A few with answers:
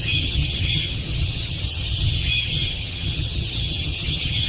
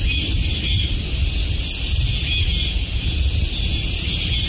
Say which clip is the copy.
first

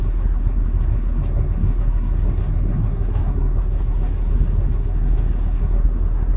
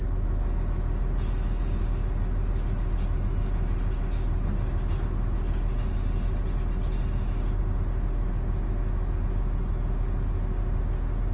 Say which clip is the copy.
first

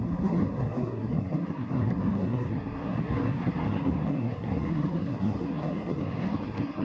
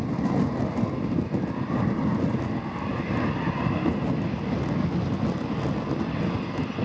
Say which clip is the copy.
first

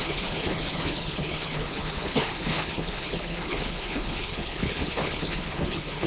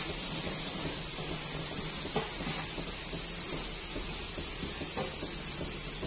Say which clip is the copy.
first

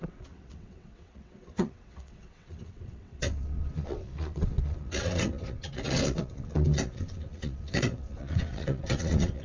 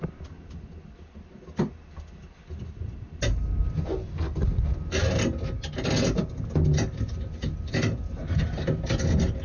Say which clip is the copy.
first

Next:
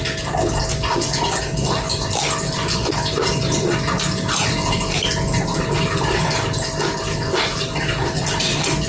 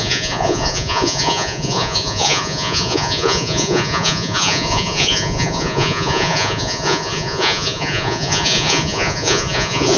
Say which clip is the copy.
second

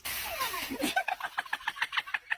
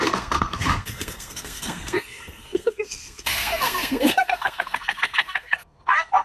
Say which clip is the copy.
second